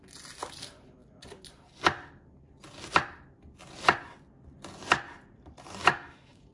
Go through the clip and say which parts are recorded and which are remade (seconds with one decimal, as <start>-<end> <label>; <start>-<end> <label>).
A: 0.0-5.8 recorded; 5.8-6.5 remade